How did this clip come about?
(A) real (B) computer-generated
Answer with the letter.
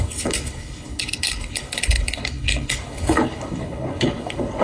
B